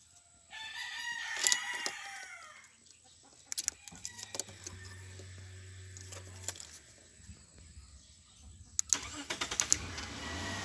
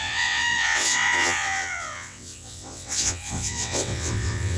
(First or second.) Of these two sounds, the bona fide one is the first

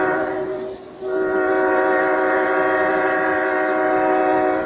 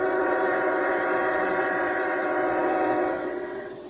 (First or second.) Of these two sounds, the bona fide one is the first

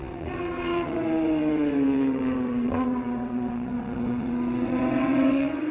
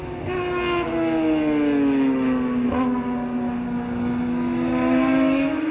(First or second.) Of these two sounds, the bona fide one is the second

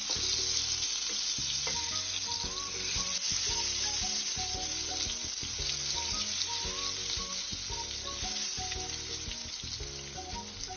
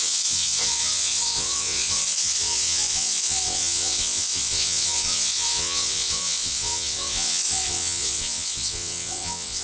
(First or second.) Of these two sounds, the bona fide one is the first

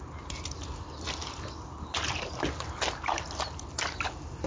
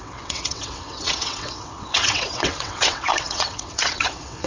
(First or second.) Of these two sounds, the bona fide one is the first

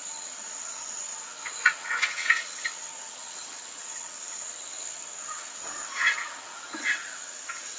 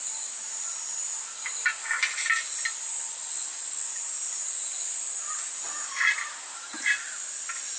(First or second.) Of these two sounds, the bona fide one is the second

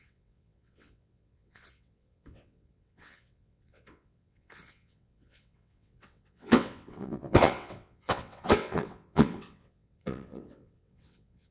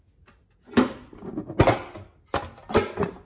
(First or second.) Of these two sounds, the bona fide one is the second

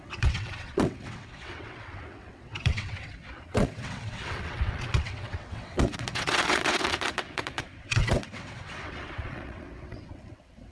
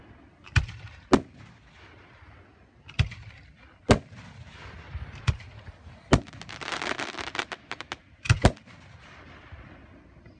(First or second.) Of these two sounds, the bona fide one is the second